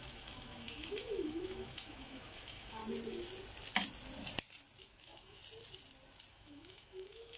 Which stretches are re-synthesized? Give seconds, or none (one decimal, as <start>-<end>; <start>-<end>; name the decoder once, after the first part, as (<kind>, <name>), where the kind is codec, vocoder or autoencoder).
0.0-2.8 (autoencoder, DAC-VAE); 4.8-5.4; 6.3-7.4